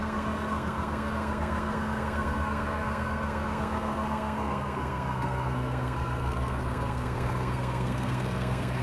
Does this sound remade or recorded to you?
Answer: remade